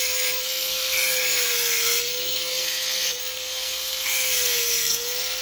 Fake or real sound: fake